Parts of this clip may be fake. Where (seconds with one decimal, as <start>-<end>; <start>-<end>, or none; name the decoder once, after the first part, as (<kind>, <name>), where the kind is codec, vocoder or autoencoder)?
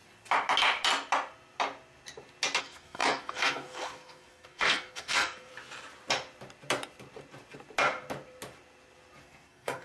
2.6-5.5 (codec, SNAC); 9.2-9.8